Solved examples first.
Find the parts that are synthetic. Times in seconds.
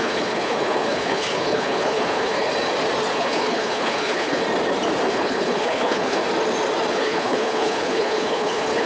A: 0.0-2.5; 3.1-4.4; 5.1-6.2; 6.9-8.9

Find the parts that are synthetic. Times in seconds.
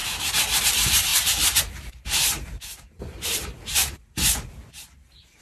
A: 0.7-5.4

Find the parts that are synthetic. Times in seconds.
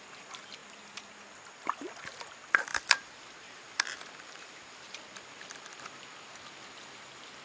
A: 2.7-5.2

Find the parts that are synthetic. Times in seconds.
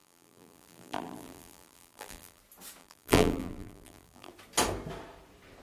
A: 0.0-2.4; 2.8-4.3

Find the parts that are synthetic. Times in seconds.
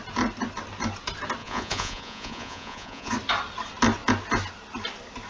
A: 1.4-3.1